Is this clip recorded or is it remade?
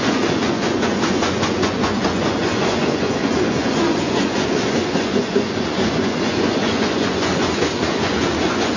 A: remade